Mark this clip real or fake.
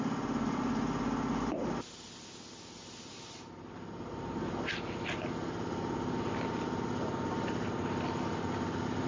real